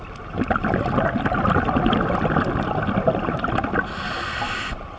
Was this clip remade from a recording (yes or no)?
no